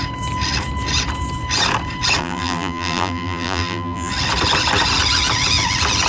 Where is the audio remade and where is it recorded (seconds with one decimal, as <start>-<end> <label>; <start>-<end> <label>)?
0.0-2.2 recorded; 2.2-4.1 remade; 4.1-6.1 recorded